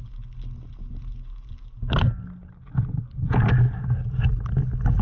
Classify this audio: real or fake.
real